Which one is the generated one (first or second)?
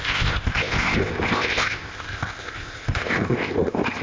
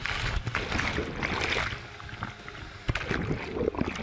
first